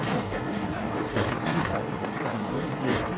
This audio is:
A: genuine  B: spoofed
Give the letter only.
B